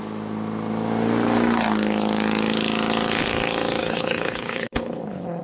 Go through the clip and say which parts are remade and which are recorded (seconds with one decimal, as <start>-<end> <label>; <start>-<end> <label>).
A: 0.0-3.8 recorded; 3.8-5.4 remade